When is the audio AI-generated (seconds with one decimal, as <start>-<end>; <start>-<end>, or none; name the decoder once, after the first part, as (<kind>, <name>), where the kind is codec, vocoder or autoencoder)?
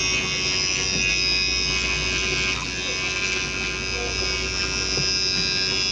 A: none